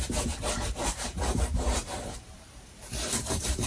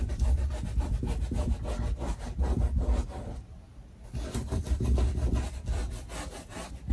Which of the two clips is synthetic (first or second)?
first